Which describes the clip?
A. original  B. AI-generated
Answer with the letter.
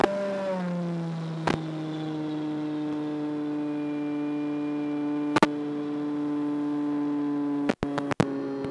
A